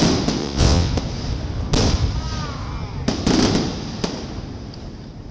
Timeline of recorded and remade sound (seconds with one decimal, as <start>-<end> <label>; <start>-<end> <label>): 0.0-0.4 recorded; 0.4-0.9 remade; 0.9-5.3 recorded